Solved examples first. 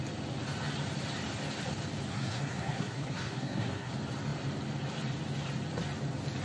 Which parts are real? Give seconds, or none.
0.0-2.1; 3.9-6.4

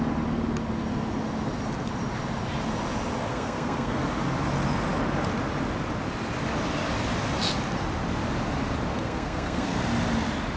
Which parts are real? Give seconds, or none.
0.0-3.3; 4.0-8.9; 9.8-10.6

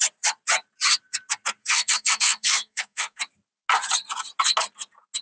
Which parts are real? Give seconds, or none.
0.0-1.6; 3.2-5.2

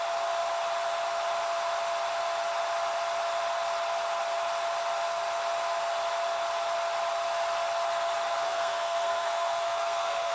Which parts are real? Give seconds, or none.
0.0-8.3

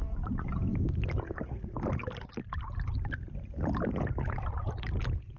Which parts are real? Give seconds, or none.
0.0-5.4

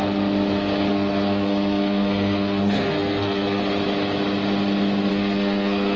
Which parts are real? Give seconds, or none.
0.0-0.9; 3.6-5.1